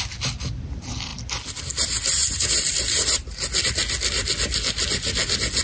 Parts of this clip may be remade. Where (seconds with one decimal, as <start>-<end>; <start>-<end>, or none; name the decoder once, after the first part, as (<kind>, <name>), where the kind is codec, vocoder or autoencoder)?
2.2-3.4 (vocoder, BigVGAN v2)